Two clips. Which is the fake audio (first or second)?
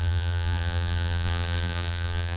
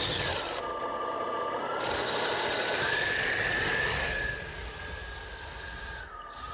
first